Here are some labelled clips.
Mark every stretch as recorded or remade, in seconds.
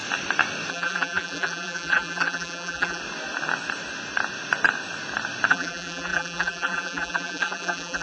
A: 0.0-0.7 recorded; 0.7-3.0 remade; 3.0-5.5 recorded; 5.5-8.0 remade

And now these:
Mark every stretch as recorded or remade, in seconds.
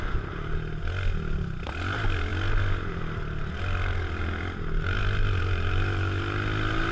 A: 0.0-6.9 recorded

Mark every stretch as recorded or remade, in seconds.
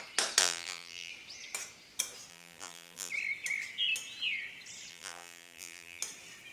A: 0.0-0.4 recorded; 0.4-1.1 remade; 1.1-2.3 recorded; 2.3-3.1 remade; 3.1-4.9 recorded; 4.9-6.0 remade; 6.0-6.5 recorded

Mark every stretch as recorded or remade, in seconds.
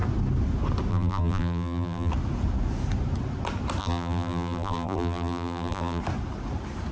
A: 0.0-0.9 recorded; 0.9-2.1 remade; 2.1-3.8 recorded; 3.8-6.0 remade; 6.0-6.9 recorded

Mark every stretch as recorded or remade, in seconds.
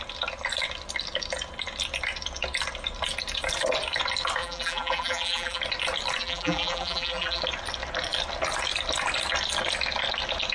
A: 0.0-4.4 recorded; 4.4-5.6 remade; 5.6-6.2 recorded; 6.2-7.4 remade; 7.4-10.5 recorded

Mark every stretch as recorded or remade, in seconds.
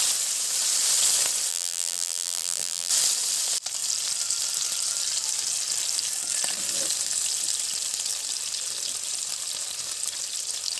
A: 0.0-1.5 recorded; 1.5-2.9 remade; 2.9-10.8 recorded